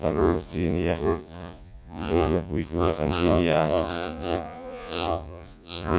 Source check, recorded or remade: remade